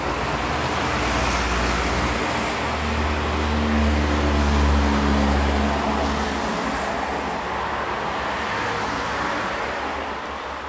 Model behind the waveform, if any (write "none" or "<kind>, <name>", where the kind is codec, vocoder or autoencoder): none